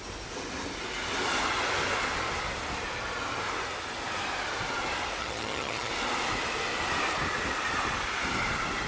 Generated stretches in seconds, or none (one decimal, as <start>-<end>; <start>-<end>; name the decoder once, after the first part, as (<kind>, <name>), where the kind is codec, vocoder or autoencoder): 5.2-5.9 (vocoder, HiFi-GAN)